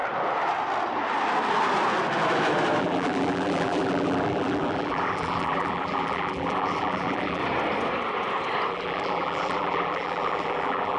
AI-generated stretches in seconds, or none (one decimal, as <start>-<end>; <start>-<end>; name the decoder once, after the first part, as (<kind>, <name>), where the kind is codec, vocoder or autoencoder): 2.8-7.4 (vocoder, BigVGAN v2); 8.7-11.0